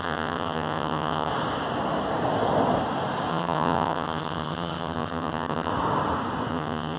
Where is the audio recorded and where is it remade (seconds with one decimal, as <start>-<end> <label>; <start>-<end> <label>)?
0.0-1.3 remade; 1.3-3.3 recorded; 3.3-5.7 remade; 5.7-6.5 recorded; 6.5-7.0 remade